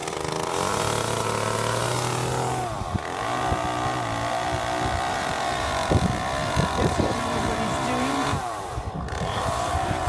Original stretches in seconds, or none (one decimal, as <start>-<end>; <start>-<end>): 0.0-5.1; 5.7-6.9